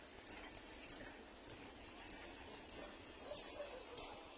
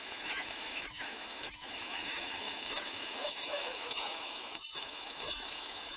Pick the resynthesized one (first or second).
second